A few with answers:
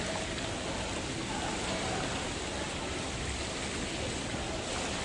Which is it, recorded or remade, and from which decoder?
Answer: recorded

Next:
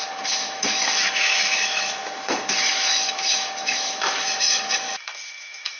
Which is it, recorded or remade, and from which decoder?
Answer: remade, autoencoder, DAC-VAE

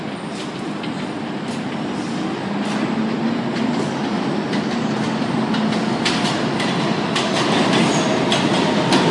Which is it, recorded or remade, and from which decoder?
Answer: recorded